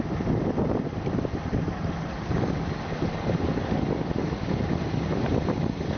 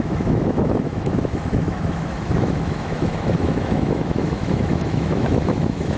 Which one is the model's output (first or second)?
second